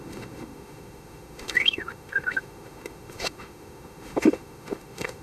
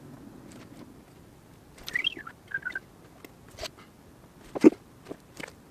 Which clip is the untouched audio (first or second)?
second